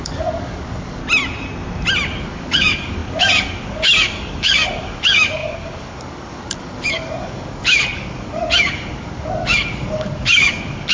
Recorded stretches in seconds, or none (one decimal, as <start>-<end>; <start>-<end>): 1.0-2.2